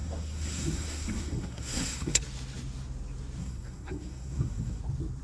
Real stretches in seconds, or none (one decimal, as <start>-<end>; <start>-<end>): 2.2-3.4; 4.8-5.2